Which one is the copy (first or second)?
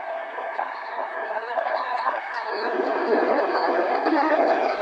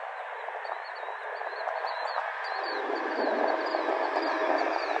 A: first